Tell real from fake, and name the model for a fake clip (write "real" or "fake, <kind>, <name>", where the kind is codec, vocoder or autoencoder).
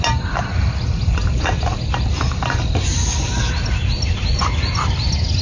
real